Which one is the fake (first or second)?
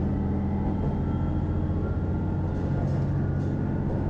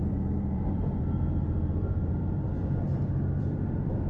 second